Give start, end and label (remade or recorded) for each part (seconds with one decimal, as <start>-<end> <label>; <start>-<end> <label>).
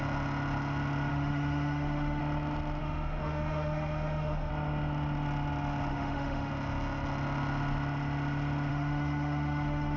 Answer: 0.0-1.1 recorded; 1.1-2.2 remade; 2.2-2.8 recorded; 2.8-4.5 remade; 4.5-5.9 recorded; 5.9-6.5 remade; 6.5-8.7 recorded; 8.7-10.0 remade